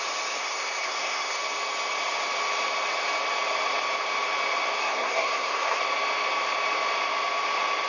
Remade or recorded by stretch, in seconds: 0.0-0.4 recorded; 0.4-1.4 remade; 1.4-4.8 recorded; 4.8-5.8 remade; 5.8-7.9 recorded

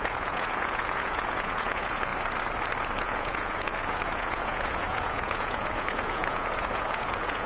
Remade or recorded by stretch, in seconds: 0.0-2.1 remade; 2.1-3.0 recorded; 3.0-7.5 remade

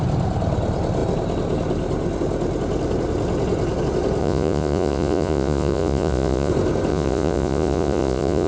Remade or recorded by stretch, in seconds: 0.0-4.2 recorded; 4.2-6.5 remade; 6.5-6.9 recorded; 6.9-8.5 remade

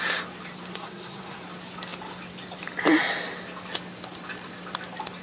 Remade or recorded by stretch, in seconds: 0.0-0.7 recorded; 0.7-1.4 remade; 1.4-5.2 recorded

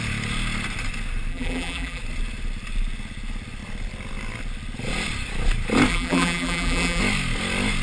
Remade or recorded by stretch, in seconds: 0.0-1.3 recorded; 1.3-2.0 remade; 2.0-5.9 recorded; 5.9-7.0 remade; 7.0-7.8 recorded